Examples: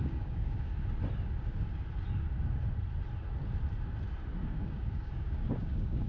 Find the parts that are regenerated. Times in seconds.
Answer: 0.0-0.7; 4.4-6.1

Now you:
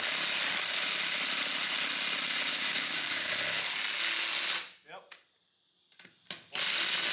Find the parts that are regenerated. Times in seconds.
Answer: 2.5-3.3

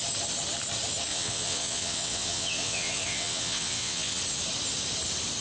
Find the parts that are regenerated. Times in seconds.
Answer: 1.1-4.2

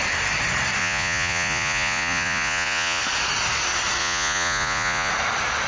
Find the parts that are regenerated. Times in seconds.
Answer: 0.8-3.0; 4.0-5.1

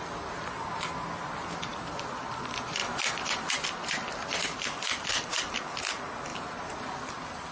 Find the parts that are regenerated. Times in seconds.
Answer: 6.3-6.9

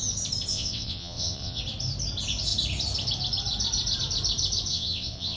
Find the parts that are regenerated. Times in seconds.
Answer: 0.5-1.6; 4.7-5.4

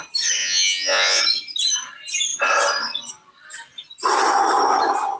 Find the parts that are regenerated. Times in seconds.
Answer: 0.4-1.2